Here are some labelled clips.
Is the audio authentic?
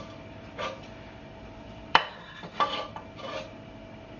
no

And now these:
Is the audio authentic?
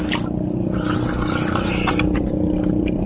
yes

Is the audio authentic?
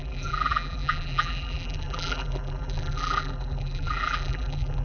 no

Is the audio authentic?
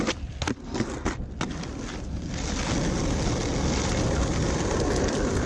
yes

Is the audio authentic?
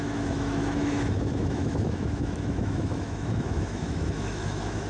no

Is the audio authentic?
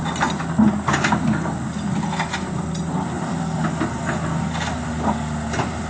yes